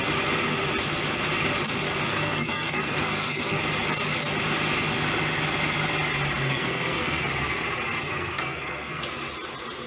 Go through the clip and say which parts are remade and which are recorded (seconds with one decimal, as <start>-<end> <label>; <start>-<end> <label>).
0.0-2.1 recorded; 2.1-3.6 remade; 3.6-6.4 recorded; 6.4-7.2 remade; 7.2-8.0 recorded; 8.0-9.0 remade; 9.0-9.9 recorded